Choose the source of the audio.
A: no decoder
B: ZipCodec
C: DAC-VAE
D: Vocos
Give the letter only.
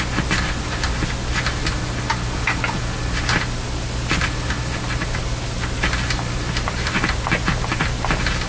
A